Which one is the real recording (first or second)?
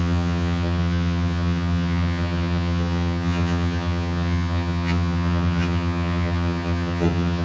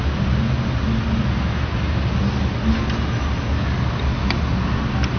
second